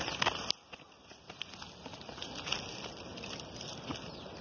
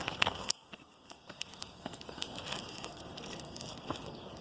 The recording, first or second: first